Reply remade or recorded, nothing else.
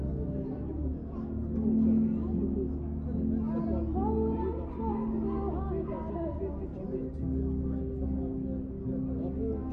recorded